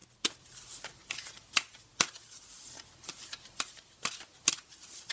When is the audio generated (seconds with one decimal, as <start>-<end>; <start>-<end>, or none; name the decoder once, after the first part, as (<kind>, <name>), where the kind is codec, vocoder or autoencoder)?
none